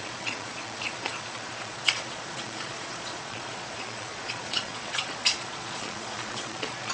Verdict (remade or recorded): remade